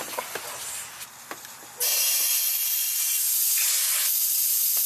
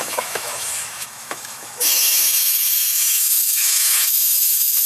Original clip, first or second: first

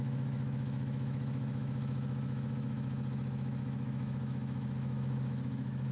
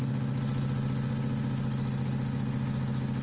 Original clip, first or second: second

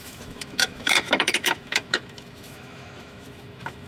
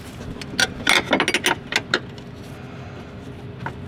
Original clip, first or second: second